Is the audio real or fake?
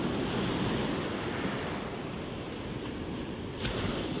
real